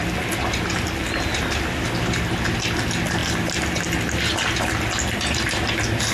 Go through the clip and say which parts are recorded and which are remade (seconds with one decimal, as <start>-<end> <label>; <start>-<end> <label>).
0.0-6.1 recorded